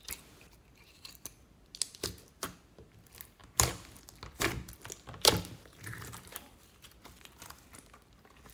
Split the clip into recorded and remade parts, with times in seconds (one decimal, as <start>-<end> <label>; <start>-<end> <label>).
0.0-8.5 recorded